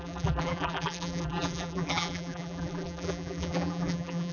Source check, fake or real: fake